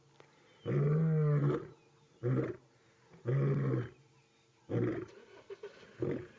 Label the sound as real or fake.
real